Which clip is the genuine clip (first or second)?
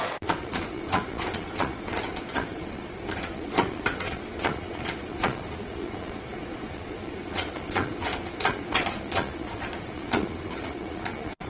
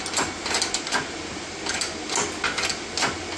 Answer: second